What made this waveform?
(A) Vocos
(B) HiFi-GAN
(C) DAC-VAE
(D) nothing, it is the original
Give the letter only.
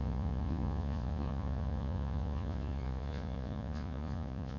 A